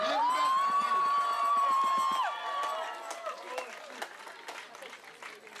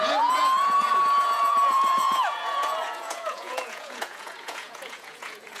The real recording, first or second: first